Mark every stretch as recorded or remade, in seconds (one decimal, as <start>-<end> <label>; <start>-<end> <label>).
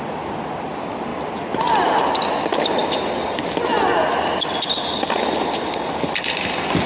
0.0-6.9 recorded